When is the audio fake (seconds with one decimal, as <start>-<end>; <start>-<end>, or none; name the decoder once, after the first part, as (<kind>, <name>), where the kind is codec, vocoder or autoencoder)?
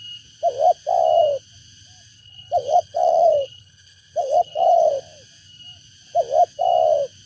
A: 2.2-4.9 (codec, HILCodec)